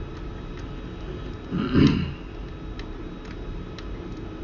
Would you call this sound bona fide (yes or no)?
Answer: yes